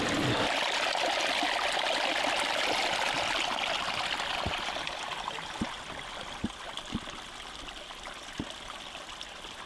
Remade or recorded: recorded